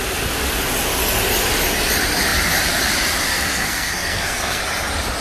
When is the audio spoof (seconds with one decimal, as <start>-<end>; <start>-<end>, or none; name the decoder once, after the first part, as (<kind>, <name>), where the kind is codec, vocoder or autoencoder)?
3.3-4.6 (codec, SNAC)